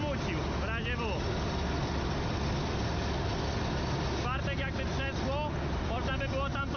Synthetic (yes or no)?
no